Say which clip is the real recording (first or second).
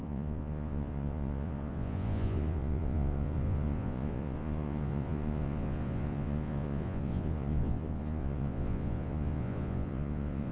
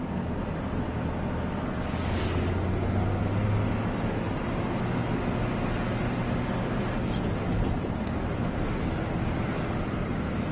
second